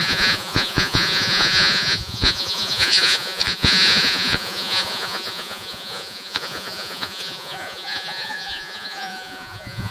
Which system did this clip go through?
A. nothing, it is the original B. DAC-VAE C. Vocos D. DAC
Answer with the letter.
C